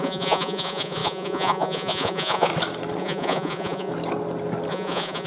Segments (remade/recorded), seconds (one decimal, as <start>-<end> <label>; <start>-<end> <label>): 0.0-2.5 remade; 2.5-3.0 recorded; 3.0-3.9 remade; 3.9-4.7 recorded; 4.7-5.3 remade